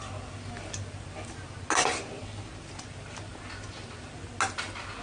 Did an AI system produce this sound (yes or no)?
no